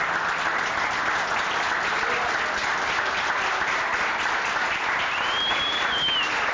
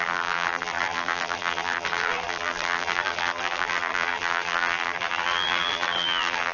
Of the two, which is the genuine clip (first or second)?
first